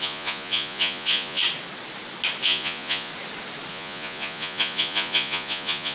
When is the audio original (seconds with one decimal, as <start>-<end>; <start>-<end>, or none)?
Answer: 1.4-2.4; 3.1-3.7